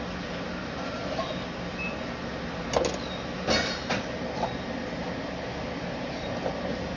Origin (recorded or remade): recorded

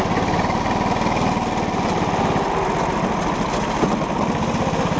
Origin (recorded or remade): recorded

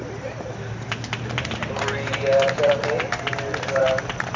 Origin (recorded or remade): recorded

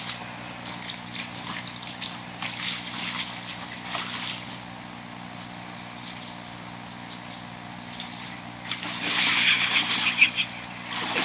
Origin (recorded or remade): recorded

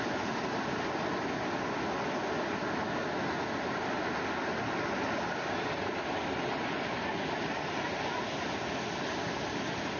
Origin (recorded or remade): recorded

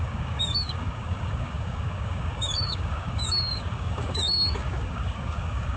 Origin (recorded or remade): remade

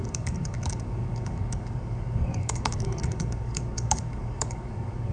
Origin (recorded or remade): remade